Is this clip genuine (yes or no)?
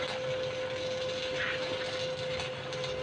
yes